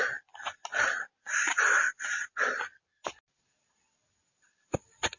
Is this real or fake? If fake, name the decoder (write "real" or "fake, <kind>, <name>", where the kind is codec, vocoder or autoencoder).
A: real